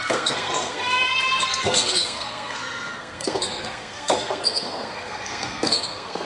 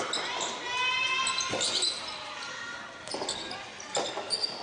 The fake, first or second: first